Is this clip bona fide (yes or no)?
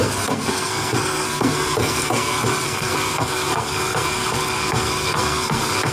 no